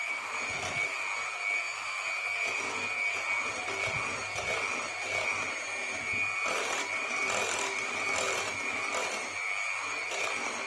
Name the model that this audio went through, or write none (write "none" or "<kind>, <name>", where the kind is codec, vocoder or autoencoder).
none